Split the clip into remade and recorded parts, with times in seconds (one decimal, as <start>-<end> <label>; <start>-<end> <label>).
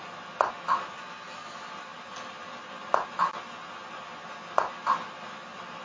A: 0.0-5.8 recorded